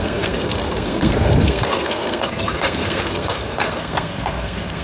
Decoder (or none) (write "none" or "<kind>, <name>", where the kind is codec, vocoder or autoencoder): codec, SNAC